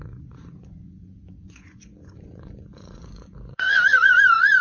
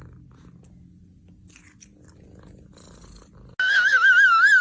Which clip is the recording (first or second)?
second